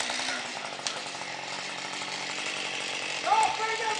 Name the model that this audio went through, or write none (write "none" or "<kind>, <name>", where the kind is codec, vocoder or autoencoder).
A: vocoder, BigVGAN v2